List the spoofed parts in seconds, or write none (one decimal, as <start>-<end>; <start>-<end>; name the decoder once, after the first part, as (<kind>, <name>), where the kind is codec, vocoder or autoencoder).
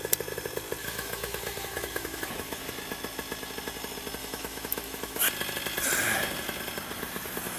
0.8-2.7 (autoencoder, DAC-VAE); 4.2-5.2